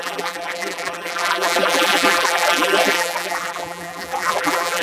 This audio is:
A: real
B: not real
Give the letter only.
B